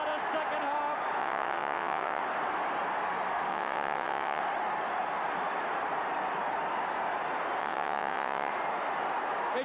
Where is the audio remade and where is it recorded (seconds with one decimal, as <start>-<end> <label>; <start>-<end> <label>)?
0.0-1.2 recorded; 1.2-2.2 remade; 2.2-3.5 recorded; 3.5-4.4 remade; 4.4-7.6 recorded; 7.6-8.5 remade; 8.5-9.6 recorded